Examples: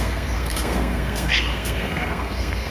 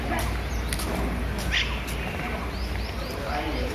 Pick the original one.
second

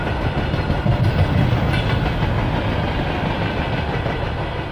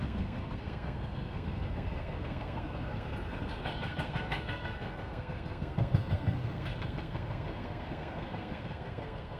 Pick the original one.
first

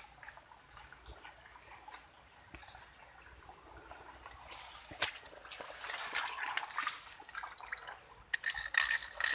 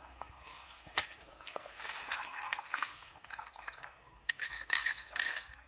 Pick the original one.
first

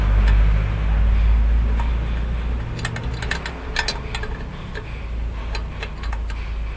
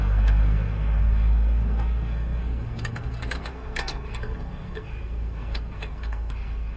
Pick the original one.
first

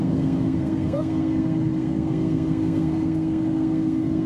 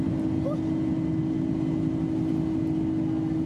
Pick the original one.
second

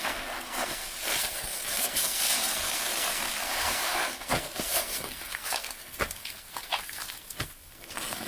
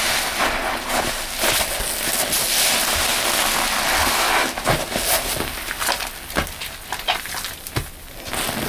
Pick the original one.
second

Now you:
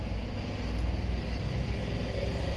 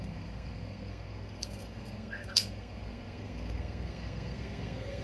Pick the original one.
first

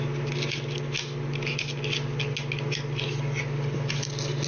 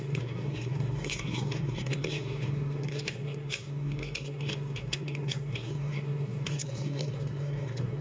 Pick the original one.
first